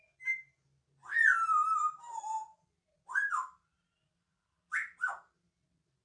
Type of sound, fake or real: real